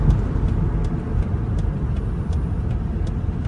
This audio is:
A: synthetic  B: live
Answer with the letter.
B